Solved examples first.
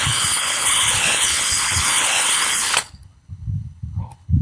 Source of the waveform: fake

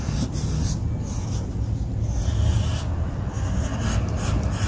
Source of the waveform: real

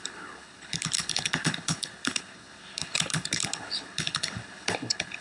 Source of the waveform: fake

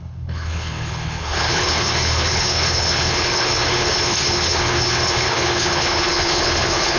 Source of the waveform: fake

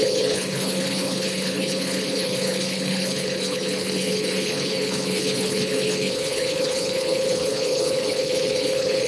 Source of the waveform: fake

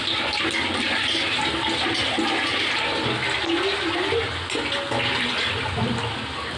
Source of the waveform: real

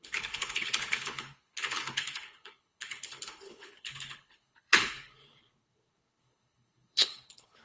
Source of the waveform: fake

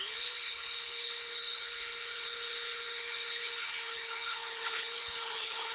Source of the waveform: fake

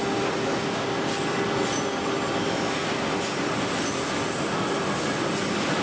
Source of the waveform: real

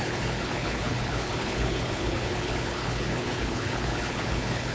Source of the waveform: fake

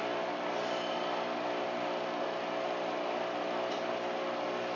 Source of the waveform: real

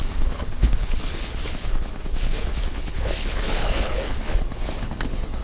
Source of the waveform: fake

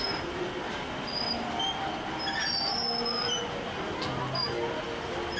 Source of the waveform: real